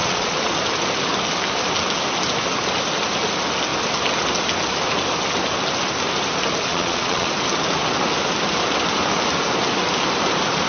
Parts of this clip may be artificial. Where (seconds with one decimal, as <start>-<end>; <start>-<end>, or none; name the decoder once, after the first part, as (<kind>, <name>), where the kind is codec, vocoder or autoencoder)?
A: 0.0-0.5 (vocoder, Vocos); 6.7-7.3